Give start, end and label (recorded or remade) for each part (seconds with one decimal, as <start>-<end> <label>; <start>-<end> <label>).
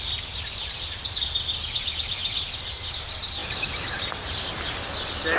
0.0-5.4 recorded